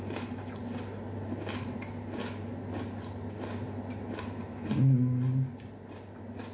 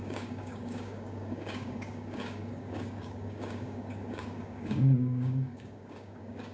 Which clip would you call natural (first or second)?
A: first